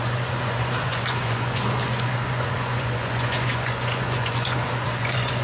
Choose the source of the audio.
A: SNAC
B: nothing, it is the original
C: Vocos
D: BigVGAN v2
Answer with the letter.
C